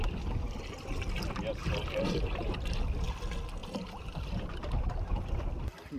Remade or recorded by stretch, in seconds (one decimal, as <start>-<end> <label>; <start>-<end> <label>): 0.0-1.6 recorded; 1.6-2.8 remade; 2.8-3.6 recorded; 3.6-5.4 remade; 5.4-6.0 recorded